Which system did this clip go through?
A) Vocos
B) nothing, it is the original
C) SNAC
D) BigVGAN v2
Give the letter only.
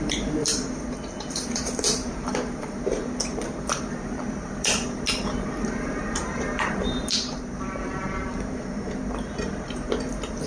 D